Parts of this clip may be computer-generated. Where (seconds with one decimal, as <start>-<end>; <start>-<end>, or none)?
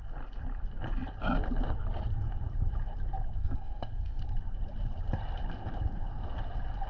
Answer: 3.4-4.2